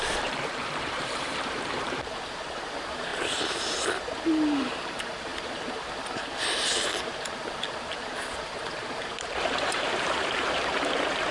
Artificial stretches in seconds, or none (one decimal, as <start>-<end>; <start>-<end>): 0.0-11.3